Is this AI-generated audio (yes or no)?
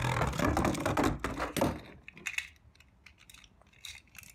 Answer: no